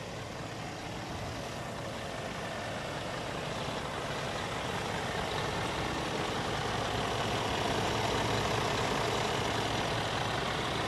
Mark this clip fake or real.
real